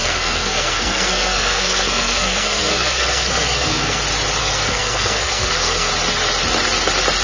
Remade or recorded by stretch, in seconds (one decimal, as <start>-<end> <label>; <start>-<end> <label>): 0.0-4.0 remade; 4.0-4.4 recorded; 4.4-5.9 remade; 5.9-7.2 recorded